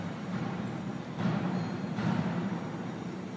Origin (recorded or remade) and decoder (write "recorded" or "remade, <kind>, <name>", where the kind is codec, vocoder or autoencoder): remade, vocoder, BigVGAN v2